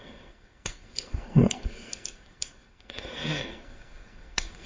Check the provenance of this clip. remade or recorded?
remade